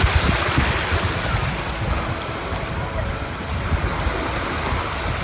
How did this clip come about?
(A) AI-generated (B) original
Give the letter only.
B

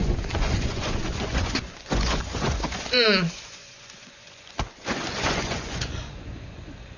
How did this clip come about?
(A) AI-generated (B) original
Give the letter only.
A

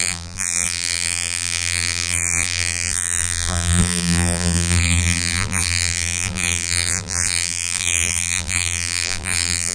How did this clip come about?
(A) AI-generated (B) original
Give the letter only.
A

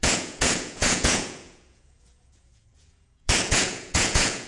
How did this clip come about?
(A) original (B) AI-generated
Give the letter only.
B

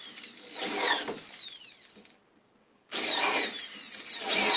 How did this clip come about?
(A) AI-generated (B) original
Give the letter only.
A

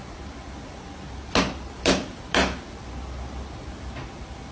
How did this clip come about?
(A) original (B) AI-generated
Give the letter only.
A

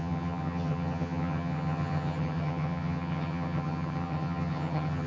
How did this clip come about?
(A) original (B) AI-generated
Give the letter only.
B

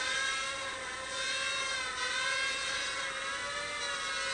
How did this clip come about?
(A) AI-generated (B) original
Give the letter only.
B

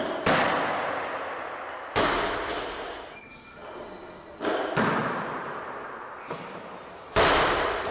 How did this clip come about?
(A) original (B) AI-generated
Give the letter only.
A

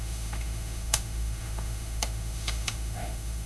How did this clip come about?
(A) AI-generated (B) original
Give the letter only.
A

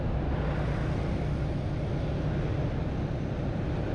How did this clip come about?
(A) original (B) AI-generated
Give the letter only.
A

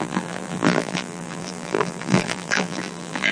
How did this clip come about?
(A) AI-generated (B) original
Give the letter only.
A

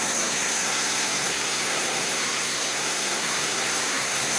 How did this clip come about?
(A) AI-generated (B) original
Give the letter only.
A